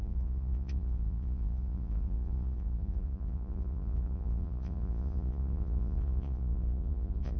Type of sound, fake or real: fake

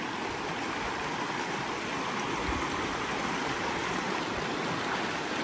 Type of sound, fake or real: real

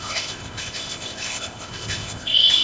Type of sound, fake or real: fake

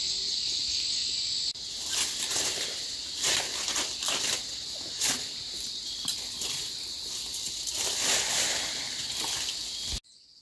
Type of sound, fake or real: real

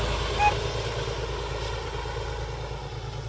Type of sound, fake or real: real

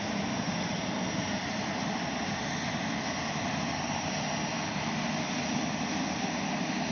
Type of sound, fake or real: real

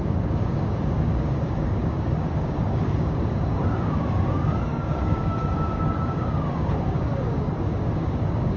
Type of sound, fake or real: fake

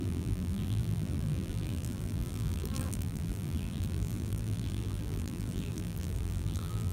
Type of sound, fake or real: fake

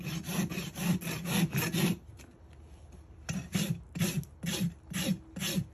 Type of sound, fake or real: real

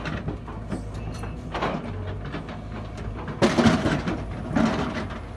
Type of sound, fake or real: real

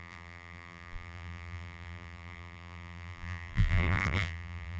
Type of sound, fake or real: fake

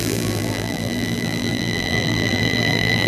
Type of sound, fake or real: fake